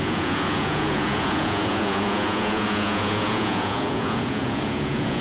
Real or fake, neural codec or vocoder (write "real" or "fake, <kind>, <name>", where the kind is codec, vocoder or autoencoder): fake, vocoder, Vocos